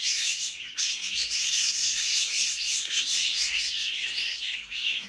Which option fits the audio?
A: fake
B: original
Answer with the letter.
A